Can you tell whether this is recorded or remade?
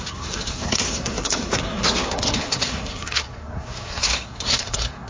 remade